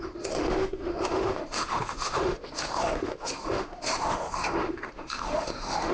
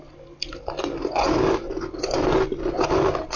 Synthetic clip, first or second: first